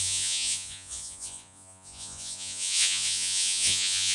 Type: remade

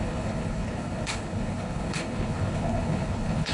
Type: remade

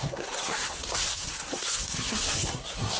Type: remade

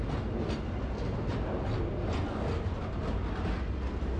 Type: recorded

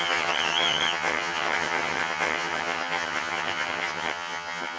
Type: remade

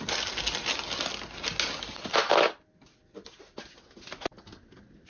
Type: recorded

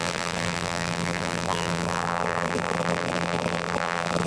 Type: remade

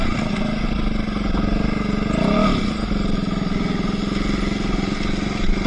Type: recorded